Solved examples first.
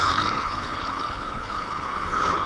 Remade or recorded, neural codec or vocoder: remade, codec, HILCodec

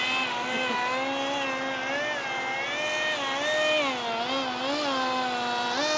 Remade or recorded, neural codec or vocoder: recorded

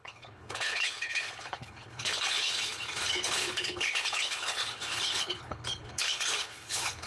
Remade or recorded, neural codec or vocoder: remade, codec, HILCodec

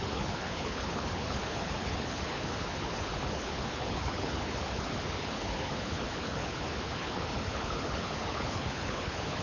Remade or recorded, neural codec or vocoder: remade, codec, HILCodec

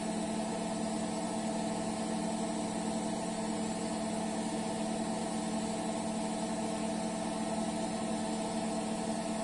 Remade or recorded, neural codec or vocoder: recorded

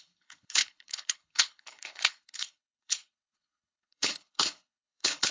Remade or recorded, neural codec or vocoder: remade, codec, HILCodec